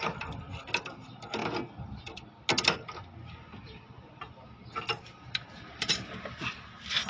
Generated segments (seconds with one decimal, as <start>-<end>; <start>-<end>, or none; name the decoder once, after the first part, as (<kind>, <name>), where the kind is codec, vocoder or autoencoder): none